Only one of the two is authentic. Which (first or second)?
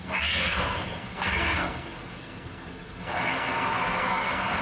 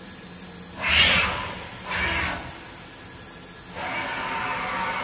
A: second